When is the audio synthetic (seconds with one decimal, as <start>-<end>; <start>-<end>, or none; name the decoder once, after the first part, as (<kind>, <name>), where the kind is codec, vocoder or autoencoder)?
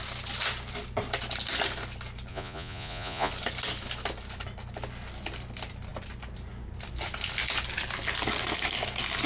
2.3-3.3 (vocoder, Vocos)